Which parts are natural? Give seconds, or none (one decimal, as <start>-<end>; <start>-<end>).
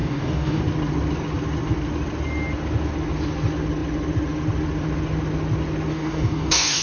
0.6-5.9